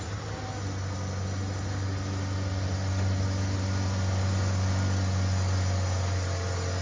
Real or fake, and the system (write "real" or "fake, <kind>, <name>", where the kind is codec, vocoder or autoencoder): real